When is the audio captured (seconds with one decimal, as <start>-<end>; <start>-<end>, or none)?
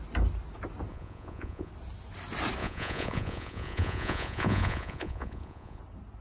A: 0.0-0.9; 1.7-2.6; 5.8-6.2